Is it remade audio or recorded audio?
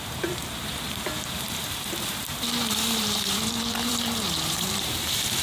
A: remade